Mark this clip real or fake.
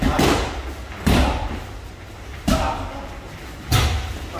real